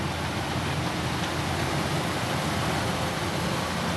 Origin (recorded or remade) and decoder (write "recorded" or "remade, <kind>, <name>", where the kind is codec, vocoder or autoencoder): recorded